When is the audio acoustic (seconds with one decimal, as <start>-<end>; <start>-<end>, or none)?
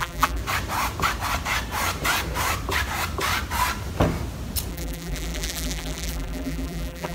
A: 0.4-4.7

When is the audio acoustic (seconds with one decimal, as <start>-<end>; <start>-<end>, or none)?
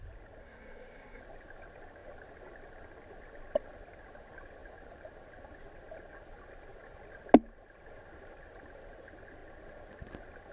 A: 0.0-0.4; 1.2-10.5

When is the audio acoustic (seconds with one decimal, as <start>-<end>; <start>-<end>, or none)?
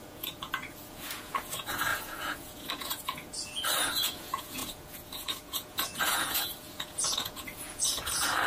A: none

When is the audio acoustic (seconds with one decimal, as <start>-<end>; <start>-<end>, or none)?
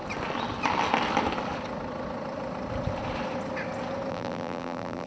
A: 0.0-4.1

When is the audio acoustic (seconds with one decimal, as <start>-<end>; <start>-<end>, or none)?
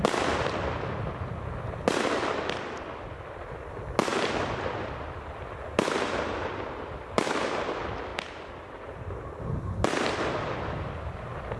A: 0.0-11.6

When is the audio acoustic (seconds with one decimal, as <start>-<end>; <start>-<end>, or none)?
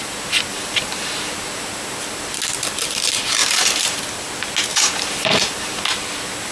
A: 0.0-0.5; 1.3-3.4; 4.0-4.7; 5.8-6.5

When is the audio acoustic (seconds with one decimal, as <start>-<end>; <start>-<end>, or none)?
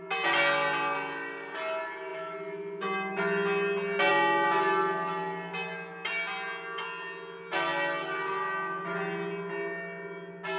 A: 0.0-10.6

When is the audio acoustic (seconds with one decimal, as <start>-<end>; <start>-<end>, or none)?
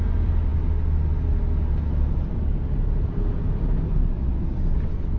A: 0.0-5.2